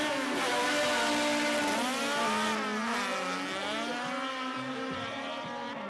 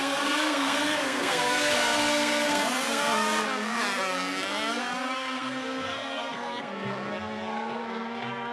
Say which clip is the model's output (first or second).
second